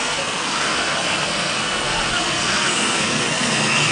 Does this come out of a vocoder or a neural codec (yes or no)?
yes